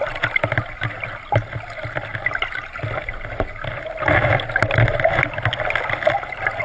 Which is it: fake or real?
real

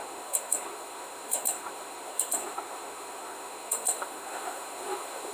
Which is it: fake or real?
fake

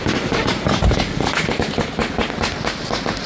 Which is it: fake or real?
real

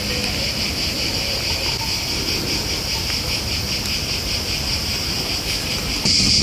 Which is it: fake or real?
real